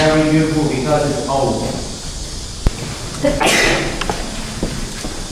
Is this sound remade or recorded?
recorded